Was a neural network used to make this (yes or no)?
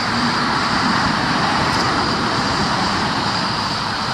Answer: yes